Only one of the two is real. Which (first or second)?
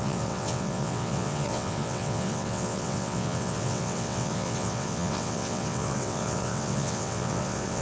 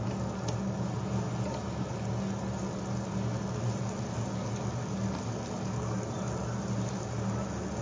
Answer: second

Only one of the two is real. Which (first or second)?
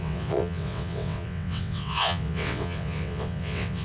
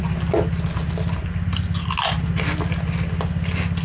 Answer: second